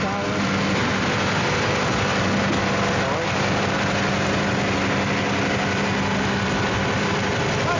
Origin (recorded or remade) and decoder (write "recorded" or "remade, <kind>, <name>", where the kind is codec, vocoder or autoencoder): recorded